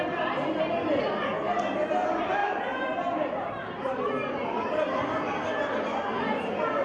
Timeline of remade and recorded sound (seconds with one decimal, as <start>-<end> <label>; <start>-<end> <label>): 0.0-2.4 recorded; 2.4-4.0 remade; 4.0-6.8 recorded